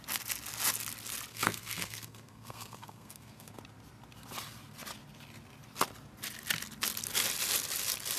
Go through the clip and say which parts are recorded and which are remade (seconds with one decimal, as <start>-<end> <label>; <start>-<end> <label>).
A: 0.0-1.3 recorded; 1.3-3.6 remade; 3.6-8.2 recorded